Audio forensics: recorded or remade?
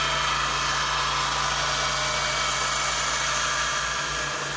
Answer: recorded